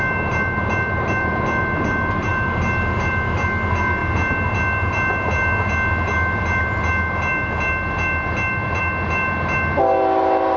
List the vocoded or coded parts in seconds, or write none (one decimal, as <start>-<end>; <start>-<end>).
none